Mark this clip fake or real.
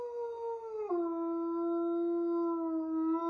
real